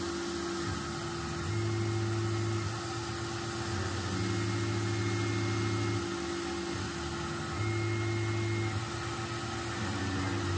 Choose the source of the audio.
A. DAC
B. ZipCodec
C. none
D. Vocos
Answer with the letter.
C